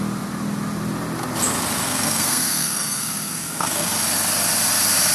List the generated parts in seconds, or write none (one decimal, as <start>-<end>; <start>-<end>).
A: 1.8-3.9